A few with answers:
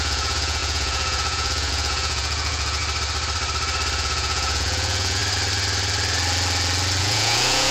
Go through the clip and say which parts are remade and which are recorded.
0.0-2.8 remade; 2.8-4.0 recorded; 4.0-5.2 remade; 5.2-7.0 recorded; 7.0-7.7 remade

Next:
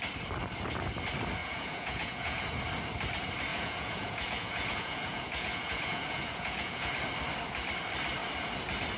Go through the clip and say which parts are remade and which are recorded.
0.0-1.4 recorded; 1.4-2.4 remade; 2.4-3.5 recorded; 3.5-7.0 remade; 7.0-9.0 recorded

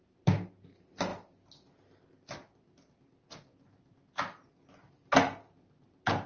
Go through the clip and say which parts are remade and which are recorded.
0.0-6.3 recorded

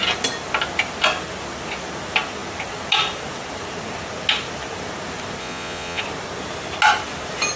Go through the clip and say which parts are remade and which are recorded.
0.0-5.4 recorded; 5.4-6.0 remade; 6.0-7.6 recorded

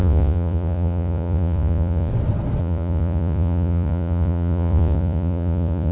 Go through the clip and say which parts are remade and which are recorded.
0.0-2.1 remade; 2.1-2.6 recorded; 2.6-5.9 remade

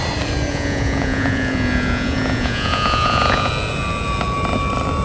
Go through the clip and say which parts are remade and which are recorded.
0.0-0.5 recorded; 0.5-3.5 remade; 3.5-5.0 recorded

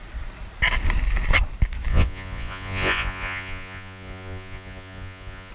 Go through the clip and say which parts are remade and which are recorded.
0.0-1.9 recorded; 1.9-5.5 remade